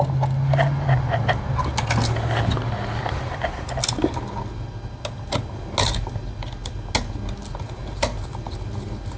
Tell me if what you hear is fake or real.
real